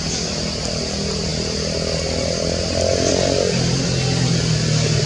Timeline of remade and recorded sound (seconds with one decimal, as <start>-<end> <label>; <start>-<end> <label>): 0.0-5.1 recorded